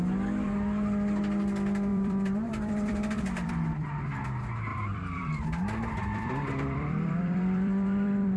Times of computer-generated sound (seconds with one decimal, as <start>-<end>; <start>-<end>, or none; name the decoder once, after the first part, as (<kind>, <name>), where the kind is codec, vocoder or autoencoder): 1.9-3.5 (vocoder, BigVGAN v2); 4.7-8.4